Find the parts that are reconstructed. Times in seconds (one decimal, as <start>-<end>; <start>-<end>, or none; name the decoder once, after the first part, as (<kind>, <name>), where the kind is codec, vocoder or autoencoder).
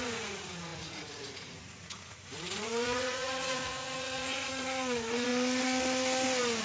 0.0-5.3 (vocoder, Vocos)